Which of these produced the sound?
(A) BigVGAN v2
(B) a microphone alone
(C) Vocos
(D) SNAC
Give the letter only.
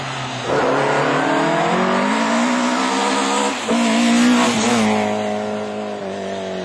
B